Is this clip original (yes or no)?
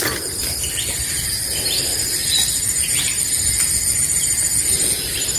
yes